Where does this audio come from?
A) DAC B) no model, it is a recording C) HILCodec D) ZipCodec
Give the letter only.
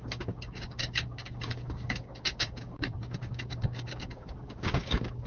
A